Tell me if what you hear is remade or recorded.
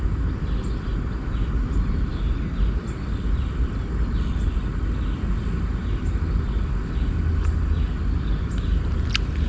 recorded